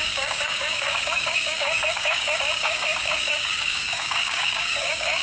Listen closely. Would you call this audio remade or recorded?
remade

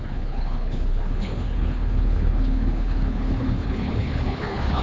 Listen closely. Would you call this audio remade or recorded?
remade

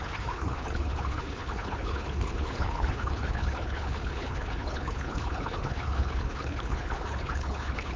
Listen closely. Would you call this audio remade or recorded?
remade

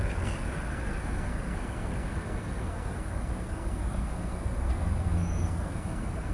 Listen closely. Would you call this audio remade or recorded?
remade